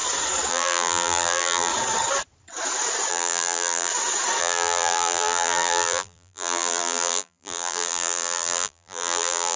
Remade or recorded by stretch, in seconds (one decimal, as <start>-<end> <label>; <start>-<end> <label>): 0.0-0.5 recorded; 0.5-1.7 remade; 1.7-3.1 recorded; 3.1-3.9 remade; 3.9-4.4 recorded; 4.4-9.6 remade

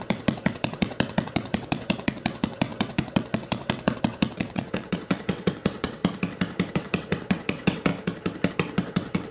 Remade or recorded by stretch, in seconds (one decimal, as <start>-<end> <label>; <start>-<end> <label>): 0.0-6.0 remade; 6.0-6.7 recorded; 6.7-7.9 remade; 7.9-8.5 recorded; 8.5-9.3 remade